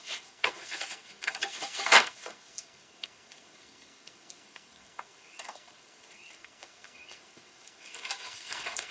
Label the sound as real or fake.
fake